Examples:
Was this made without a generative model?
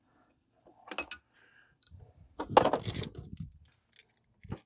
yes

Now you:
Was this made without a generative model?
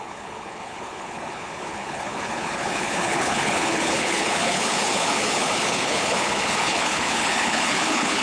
no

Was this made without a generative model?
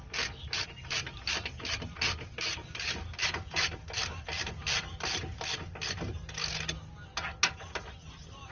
yes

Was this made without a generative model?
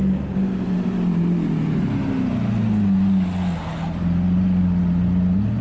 yes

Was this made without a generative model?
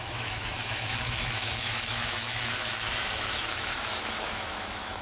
no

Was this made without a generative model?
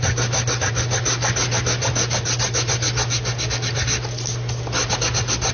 yes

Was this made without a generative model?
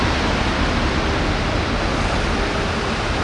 yes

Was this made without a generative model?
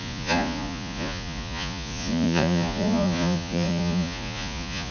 no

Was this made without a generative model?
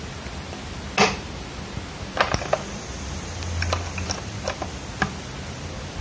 yes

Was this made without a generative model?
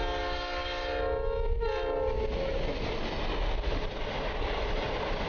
yes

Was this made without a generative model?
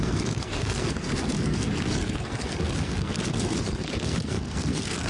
no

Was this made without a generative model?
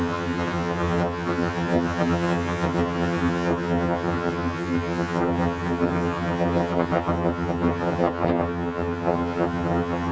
no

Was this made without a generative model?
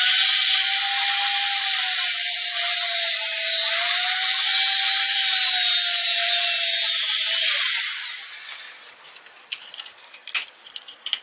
yes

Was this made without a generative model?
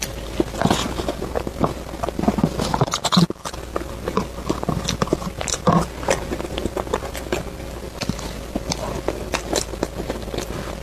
yes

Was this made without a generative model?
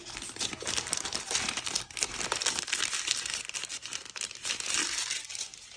yes